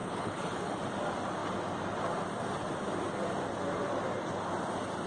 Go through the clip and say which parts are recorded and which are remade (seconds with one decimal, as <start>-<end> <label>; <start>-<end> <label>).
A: 0.0-0.8 remade; 0.8-5.1 recorded

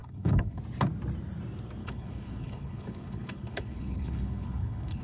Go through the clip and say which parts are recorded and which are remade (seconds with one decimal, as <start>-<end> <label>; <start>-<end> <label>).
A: 0.0-0.6 remade; 0.6-1.8 recorded; 1.8-5.0 remade

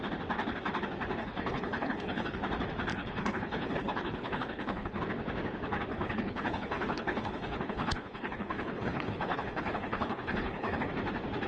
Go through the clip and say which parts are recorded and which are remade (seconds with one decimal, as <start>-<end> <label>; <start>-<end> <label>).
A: 0.0-1.2 recorded; 1.2-2.4 remade; 2.4-2.9 recorded; 2.9-5.0 remade; 5.0-5.9 recorded; 5.9-10.9 remade; 10.9-11.5 recorded

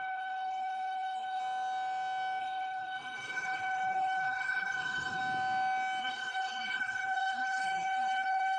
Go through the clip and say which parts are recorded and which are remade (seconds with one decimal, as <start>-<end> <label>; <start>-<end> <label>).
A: 0.0-1.4 remade; 1.4-2.4 recorded; 2.4-5.2 remade; 5.2-6.0 recorded; 6.0-8.6 remade